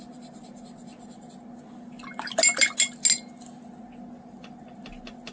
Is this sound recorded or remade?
recorded